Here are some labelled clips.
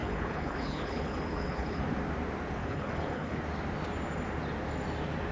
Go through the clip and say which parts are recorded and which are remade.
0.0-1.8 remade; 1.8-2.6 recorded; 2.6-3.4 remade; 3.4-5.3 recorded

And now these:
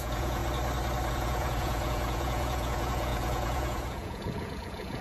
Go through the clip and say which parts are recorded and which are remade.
0.0-0.4 remade; 0.4-1.1 recorded; 1.1-5.0 remade

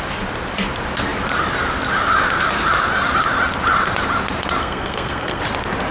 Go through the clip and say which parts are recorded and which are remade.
0.0-4.6 recorded; 4.6-5.4 remade; 5.4-5.9 recorded